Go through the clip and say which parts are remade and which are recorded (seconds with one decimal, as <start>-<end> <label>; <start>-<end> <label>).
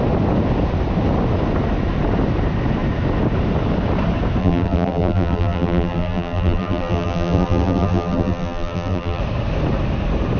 0.0-4.4 recorded; 4.4-9.2 remade; 9.2-10.4 recorded